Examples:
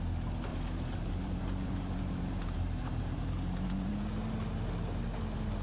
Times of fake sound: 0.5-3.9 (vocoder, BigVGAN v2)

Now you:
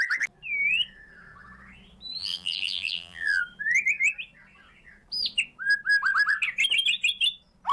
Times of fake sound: 2.2-3.4 (vocoder, BigVGAN v2)

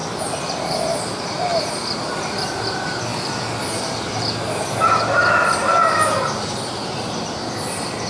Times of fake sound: 0.6-3.1 (vocoder, BigVGAN v2); 6.2-8.1

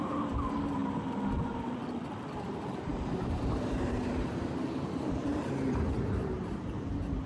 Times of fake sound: 0.0-1.8 (vocoder, BigVGAN v2); 2.4-7.3

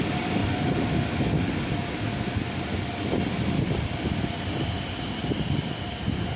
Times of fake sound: 0.0-0.4 (vocoder, BigVGAN v2); 2.7-6.4